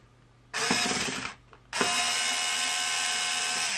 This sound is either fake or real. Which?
real